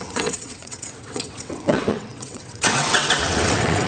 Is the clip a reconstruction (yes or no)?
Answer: yes